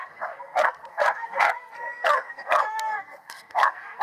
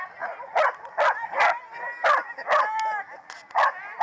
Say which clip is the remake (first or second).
first